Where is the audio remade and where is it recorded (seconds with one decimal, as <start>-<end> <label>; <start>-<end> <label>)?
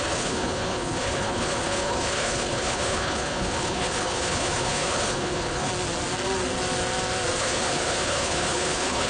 0.0-5.7 remade; 5.7-7.4 recorded; 7.4-9.1 remade